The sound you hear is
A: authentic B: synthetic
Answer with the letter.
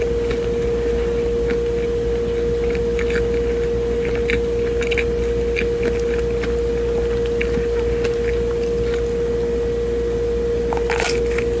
A